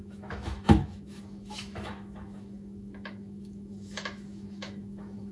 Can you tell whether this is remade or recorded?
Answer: remade